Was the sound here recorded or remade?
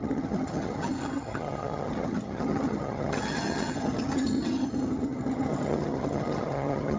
remade